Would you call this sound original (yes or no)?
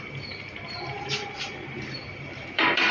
no